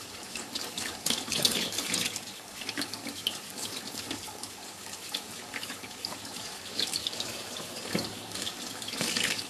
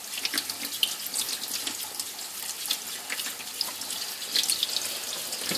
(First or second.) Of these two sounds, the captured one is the second